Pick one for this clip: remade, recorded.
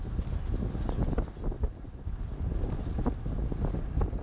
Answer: recorded